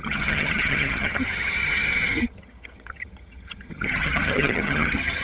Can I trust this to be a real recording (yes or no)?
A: no